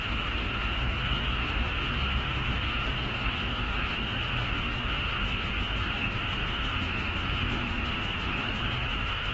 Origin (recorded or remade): remade